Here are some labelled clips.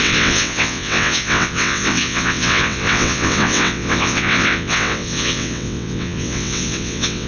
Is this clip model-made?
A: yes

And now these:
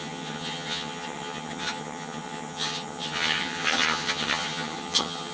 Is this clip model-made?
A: yes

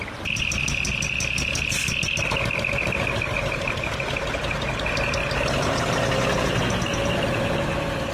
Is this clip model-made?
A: no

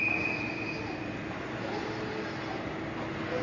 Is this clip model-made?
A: no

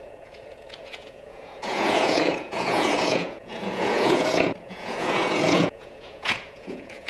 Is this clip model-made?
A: yes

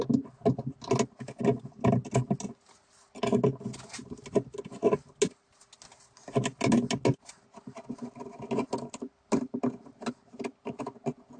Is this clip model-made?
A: no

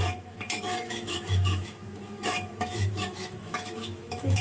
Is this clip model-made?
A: yes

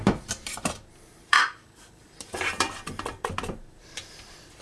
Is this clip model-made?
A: yes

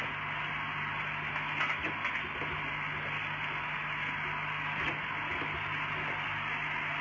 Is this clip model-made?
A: no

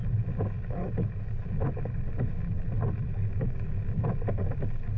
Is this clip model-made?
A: no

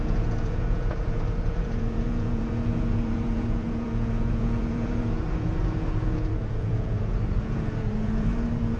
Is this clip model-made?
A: yes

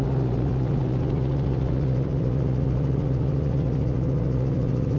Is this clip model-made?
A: yes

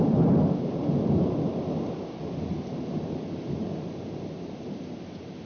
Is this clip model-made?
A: no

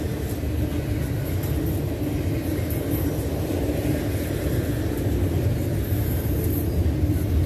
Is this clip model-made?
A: no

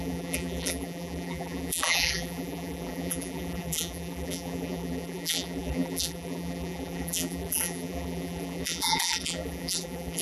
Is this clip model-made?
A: yes